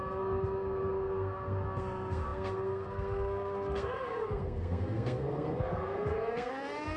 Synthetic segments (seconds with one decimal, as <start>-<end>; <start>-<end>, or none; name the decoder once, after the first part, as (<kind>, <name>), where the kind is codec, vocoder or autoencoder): 0.0-7.0 (codec, SNAC)